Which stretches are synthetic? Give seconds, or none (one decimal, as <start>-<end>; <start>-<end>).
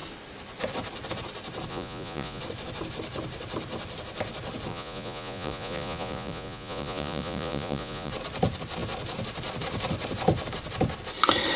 1.7-2.4; 4.7-8.1